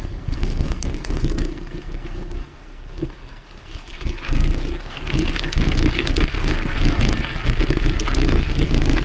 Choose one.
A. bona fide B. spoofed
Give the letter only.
B